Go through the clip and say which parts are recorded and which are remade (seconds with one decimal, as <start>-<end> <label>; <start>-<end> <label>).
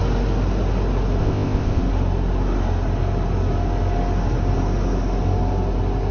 0.0-1.2 recorded; 1.2-1.8 remade; 1.8-6.1 recorded